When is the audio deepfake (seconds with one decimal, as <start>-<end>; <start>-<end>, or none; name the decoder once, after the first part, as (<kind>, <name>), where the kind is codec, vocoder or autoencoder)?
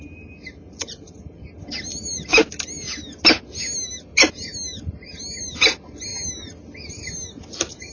0.0-2.4 (vocoder, BigVGAN v2); 5.4-6.1; 6.9-7.9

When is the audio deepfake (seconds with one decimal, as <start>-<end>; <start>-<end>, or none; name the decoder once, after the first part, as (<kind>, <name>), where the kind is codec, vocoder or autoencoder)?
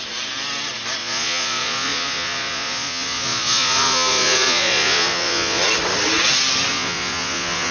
1.0-5.6 (vocoder, Vocos); 6.7-7.7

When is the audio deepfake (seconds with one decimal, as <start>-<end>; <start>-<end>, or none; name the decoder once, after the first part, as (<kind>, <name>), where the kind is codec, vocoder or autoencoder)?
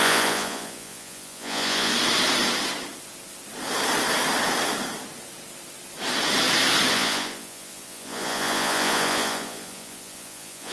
0.0-1.9 (vocoder, Vocos); 6.9-10.7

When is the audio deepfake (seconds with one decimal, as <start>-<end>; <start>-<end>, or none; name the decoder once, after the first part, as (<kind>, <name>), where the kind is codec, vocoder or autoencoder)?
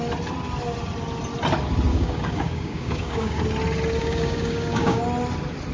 1.9-3.4 (codec, DAC); 4.0-5.0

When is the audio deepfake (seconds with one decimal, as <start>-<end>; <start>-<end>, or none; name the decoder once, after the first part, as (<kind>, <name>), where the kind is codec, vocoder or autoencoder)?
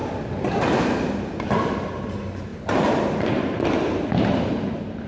none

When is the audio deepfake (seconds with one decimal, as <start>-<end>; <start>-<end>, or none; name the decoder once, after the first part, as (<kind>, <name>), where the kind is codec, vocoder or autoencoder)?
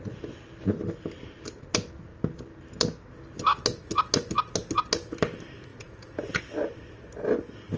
5.7-6.4 (vocoder, Vocos)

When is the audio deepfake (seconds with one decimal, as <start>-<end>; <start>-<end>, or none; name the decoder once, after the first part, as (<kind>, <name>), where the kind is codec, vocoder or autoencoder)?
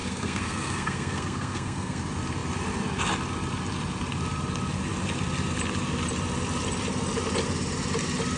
0.0-2.0 (codec, SNAC)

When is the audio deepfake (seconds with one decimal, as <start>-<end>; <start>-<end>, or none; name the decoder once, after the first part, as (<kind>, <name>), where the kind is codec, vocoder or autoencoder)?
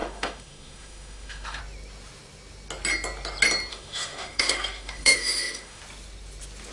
0.0-1.6 (autoencoder, DAC-VAE); 3.7-5.8